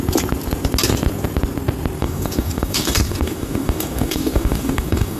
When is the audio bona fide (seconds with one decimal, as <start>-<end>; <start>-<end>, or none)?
0.0-2.0